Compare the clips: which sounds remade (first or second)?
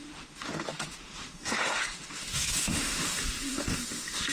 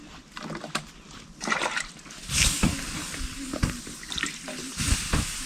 first